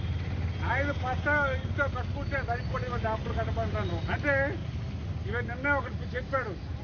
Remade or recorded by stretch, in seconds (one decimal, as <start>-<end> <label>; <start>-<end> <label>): 0.0-6.8 recorded